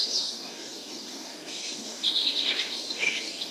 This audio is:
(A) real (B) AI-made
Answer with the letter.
B